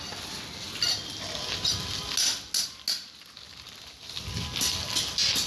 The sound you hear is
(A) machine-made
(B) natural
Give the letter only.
B